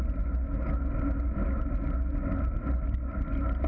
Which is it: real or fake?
real